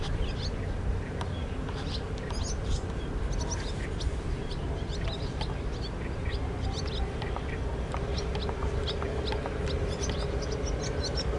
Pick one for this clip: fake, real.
real